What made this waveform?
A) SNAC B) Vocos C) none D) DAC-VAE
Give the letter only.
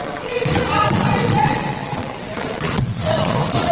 B